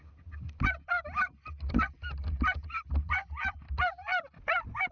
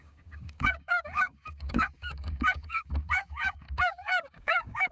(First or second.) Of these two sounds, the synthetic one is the second